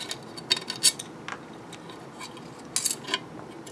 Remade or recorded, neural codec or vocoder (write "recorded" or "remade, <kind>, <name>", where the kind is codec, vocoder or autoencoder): recorded